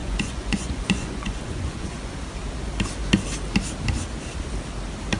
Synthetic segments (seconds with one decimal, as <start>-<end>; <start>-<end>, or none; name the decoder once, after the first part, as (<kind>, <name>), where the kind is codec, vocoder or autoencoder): 0.0-2.1 (vocoder, Vocos)